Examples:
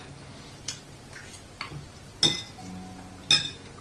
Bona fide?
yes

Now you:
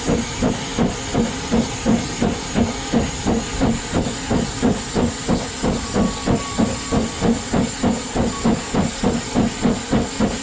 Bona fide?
yes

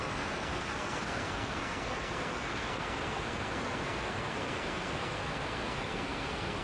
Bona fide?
no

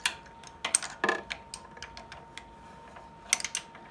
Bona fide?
yes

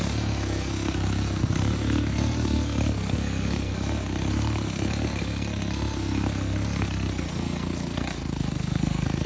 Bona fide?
no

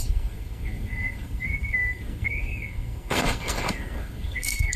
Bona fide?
no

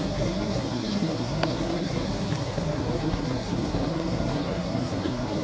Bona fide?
no